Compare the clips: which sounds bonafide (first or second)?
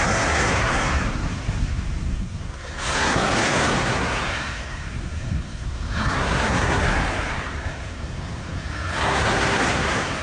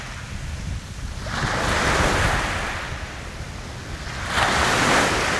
second